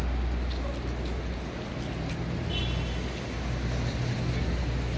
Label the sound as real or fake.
real